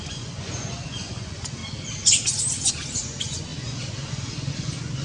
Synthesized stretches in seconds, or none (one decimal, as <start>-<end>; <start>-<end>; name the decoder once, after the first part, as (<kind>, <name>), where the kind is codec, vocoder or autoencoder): 0.0-1.6 (vocoder, Vocos); 2.7-5.0